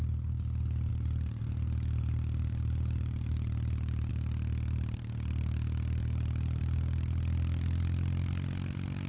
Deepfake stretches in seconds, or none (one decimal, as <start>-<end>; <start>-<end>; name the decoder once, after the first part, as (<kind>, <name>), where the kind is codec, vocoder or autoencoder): 0.9-4.1 (vocoder, BigVGAN v2); 6.0-6.6